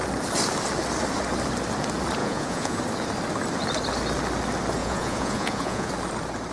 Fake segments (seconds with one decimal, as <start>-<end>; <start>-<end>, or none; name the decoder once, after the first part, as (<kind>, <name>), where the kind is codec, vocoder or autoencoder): 2.2-2.8 (vocoder, Vocos); 4.8-5.9